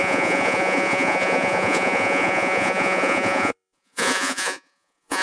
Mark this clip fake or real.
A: fake